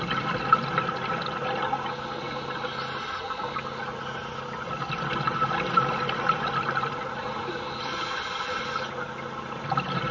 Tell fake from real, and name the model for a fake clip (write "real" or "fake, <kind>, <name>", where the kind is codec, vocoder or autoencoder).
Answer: real